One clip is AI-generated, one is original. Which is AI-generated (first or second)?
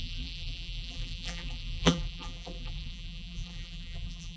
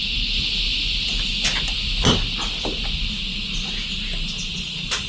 first